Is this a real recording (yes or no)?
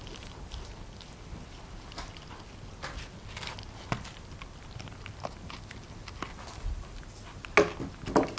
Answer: yes